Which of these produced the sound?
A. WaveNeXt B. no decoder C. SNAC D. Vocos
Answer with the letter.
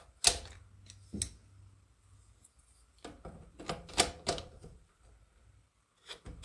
B